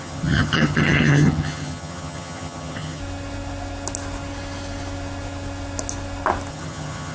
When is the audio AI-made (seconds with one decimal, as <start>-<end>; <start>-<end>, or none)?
0.0-3.0; 6.5-7.1